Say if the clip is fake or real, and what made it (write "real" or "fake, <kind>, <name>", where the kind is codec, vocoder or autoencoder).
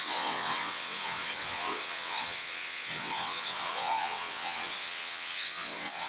fake, vocoder, WaveNeXt